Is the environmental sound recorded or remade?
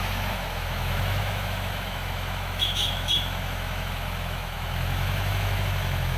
remade